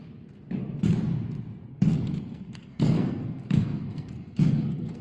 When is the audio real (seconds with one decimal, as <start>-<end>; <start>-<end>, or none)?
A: 0.0-1.7